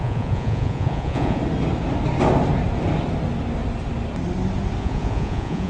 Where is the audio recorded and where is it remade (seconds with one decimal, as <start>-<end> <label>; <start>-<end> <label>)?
0.0-1.4 remade; 1.4-4.8 recorded; 4.8-5.7 remade